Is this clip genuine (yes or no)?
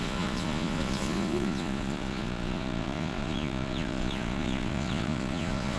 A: no